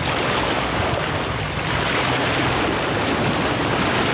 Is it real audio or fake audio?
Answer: real